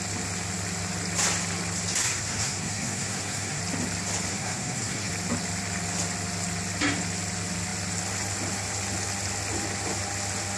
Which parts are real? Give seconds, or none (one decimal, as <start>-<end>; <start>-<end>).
0.0-2.0; 3.6-4.3; 5.1-10.6